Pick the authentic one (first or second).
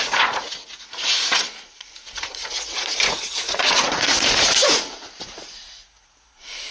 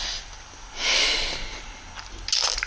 second